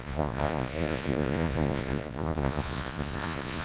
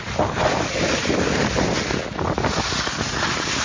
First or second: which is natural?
second